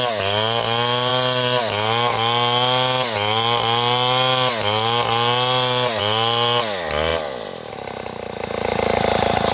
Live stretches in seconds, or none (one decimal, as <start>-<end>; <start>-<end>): 0.0-9.5